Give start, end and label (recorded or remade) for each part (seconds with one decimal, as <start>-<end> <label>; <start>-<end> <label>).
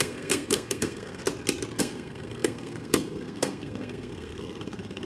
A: 0.0-1.2 remade; 1.2-1.8 recorded; 1.8-5.0 remade